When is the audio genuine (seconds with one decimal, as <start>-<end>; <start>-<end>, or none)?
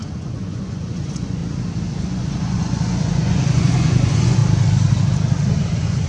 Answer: 1.4-2.0; 4.4-5.6